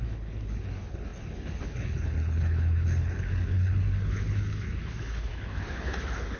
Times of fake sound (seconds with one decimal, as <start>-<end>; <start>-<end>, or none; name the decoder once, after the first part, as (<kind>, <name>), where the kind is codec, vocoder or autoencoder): 0.0-6.4 (codec, HILCodec)